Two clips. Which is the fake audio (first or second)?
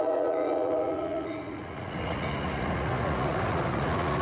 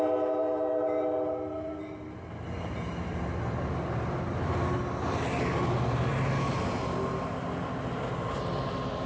first